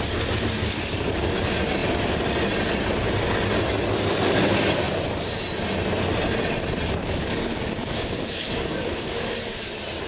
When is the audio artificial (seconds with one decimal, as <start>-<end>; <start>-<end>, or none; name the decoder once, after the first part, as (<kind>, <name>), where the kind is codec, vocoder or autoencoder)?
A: 0.6-1.3 (codec, DAC); 7.0-9.7